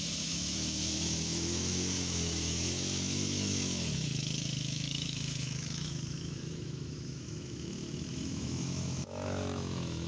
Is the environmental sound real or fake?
fake